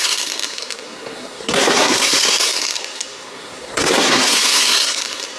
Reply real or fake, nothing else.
fake